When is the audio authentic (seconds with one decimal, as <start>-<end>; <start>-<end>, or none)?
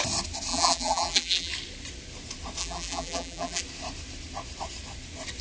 0.0-0.5; 1.5-2.6; 3.6-5.4